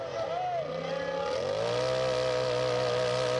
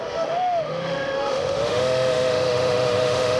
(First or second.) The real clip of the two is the first